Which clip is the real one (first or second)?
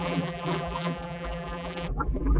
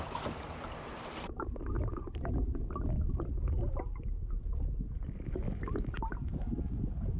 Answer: second